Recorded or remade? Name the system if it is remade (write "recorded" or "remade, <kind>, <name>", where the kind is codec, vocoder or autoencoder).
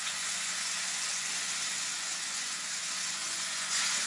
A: remade, vocoder, Vocos